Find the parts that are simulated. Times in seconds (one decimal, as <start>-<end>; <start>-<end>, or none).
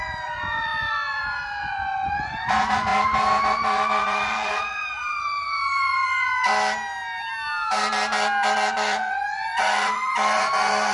0.0-6.5; 8.7-10.9